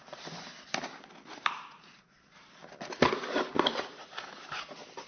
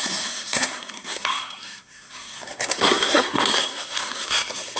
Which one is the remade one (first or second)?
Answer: second